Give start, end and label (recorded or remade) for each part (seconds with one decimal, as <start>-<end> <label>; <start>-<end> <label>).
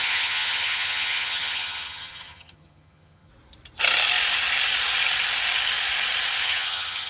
0.0-3.3 remade; 3.3-6.4 recorded; 6.4-7.1 remade